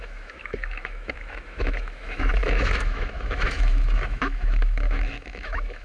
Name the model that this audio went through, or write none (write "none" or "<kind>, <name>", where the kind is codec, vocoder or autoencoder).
autoencoder, DAC-VAE